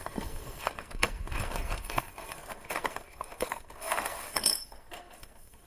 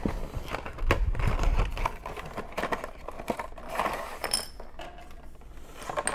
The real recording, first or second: second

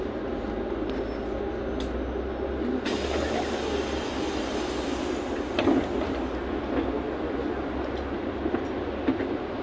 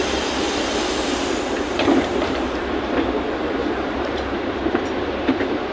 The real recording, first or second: first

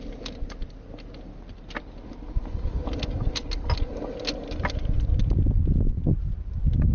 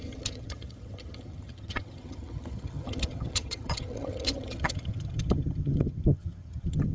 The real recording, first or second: first